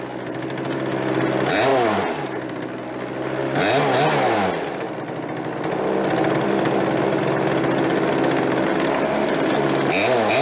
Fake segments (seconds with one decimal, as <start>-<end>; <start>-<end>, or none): none